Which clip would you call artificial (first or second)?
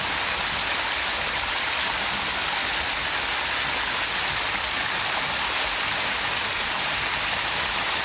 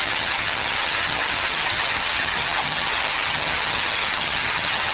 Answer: second